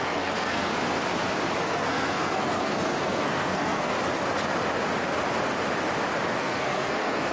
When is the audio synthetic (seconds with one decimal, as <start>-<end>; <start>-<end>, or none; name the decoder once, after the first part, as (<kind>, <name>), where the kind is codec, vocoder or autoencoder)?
0.0-0.7 (codec, SNAC); 1.6-3.9; 6.4-7.3